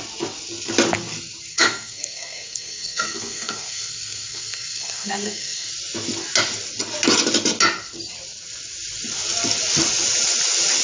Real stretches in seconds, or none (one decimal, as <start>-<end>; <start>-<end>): 0.0-1.5; 5.7-10.8